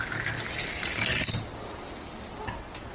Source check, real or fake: real